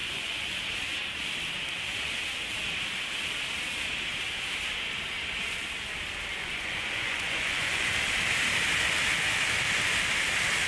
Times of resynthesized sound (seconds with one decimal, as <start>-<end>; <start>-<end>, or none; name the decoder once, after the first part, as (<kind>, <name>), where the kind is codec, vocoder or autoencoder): 0.0-0.6 (vocoder, Vocos); 6.4-7.9